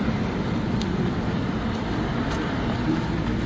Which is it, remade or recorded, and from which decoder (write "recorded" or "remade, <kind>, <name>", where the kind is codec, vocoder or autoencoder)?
remade, vocoder, BigVGAN v2